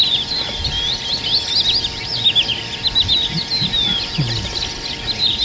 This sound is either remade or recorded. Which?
recorded